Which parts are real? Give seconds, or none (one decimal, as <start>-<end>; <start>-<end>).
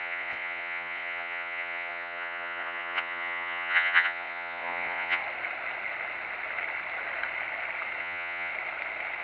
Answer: 5.2-8.0; 8.5-9.2